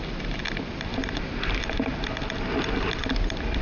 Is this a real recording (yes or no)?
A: yes